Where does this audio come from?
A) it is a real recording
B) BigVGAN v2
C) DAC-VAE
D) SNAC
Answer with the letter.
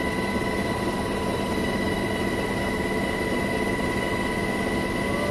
A